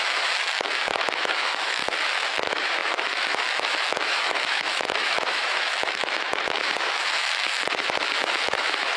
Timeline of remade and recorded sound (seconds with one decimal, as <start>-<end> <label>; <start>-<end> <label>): 0.0-1.8 remade; 1.8-2.3 recorded; 2.3-9.0 remade